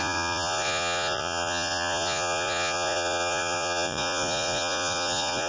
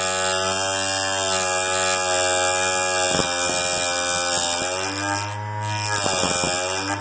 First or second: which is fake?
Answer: first